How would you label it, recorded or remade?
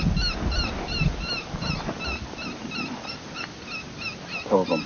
recorded